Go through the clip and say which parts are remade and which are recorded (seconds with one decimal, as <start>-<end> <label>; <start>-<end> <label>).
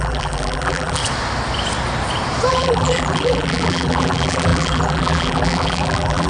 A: 0.0-1.0 remade; 1.0-2.5 recorded; 2.5-6.3 remade